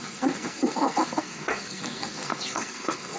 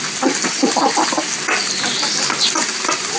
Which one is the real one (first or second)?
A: second